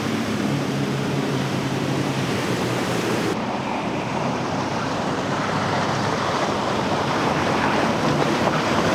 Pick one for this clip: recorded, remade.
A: remade